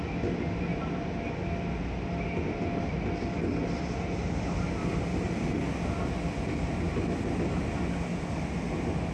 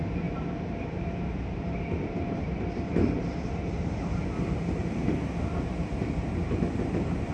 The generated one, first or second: second